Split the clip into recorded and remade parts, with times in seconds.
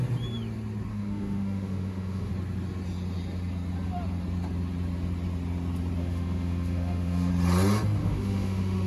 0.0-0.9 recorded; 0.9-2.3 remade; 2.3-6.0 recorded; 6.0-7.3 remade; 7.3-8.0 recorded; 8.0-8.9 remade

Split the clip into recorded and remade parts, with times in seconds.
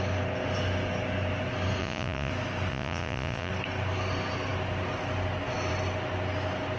0.0-1.8 recorded; 1.8-2.3 remade; 2.3-2.7 recorded; 2.7-3.5 remade; 3.5-6.8 recorded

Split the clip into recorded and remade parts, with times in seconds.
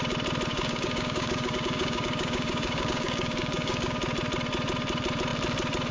0.0-0.5 recorded; 0.5-4.0 remade; 4.0-5.9 recorded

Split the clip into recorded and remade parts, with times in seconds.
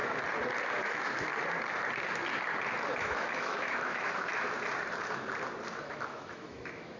0.0-0.8 recorded; 0.8-1.3 remade; 1.3-3.0 recorded; 3.0-4.3 remade; 4.3-5.8 recorded; 5.8-7.0 remade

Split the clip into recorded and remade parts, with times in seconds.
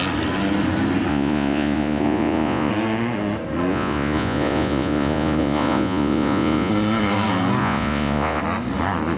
0.0-1.1 recorded; 1.1-2.7 remade; 2.7-3.7 recorded; 3.7-6.7 remade; 6.7-7.6 recorded; 7.6-8.4 remade; 8.4-9.2 recorded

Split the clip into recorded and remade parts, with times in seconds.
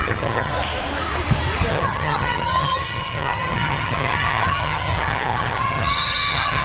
0.0-0.5 remade; 0.5-1.7 recorded; 1.7-6.6 remade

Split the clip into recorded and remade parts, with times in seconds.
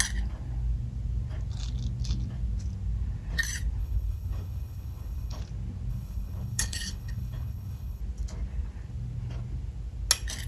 0.0-3.8 recorded; 3.8-5.4 remade; 5.4-5.9 recorded; 5.9-8.0 remade; 8.0-10.5 recorded